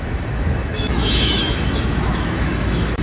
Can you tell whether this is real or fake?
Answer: fake